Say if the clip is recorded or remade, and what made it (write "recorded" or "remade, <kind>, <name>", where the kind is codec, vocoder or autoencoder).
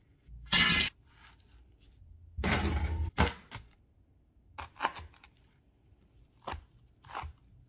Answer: recorded